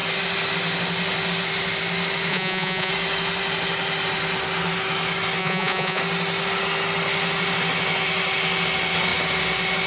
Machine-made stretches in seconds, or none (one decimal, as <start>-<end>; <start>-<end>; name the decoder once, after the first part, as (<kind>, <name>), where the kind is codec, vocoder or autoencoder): 2.3-2.9 (vocoder, Vocos); 5.4-6.0